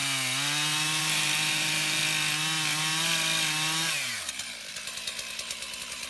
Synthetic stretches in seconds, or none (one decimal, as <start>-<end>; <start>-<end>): 1.0-2.0